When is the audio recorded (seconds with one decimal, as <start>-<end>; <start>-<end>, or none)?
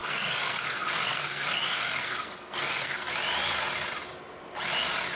3.1-5.2